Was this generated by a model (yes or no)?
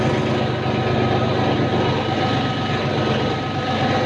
no